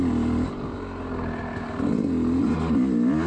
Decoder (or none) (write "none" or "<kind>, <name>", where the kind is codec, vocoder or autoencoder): none